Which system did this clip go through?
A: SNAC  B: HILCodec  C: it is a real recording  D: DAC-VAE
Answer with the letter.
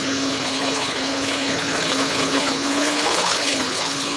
B